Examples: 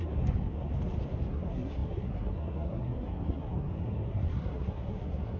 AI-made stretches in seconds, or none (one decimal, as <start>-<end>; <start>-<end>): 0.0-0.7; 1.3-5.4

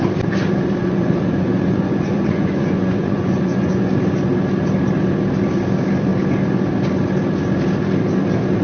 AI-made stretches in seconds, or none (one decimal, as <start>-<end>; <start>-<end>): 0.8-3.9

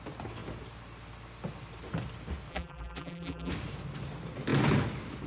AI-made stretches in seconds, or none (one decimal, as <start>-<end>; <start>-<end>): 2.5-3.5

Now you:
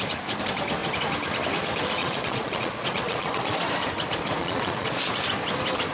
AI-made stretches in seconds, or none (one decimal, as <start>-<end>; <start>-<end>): 2.0-3.6; 4.4-5.1

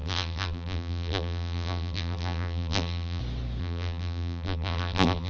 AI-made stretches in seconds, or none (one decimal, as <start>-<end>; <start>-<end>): 0.0-3.2; 3.6-5.3